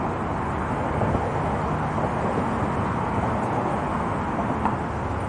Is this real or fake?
real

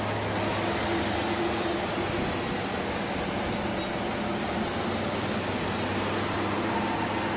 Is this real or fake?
real